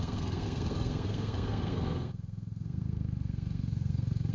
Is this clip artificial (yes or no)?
yes